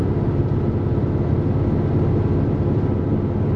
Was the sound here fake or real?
real